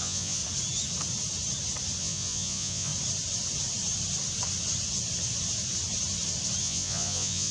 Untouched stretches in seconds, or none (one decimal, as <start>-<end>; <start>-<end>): 0.4-2.0; 2.9-6.6